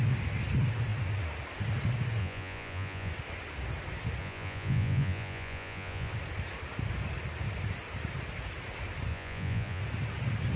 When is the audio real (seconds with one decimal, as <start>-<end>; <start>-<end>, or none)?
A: 0.0-2.2; 3.1-4.2; 6.1-9.1; 9.8-10.6